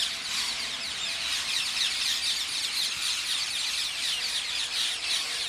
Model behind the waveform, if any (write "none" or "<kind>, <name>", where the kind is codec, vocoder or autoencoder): none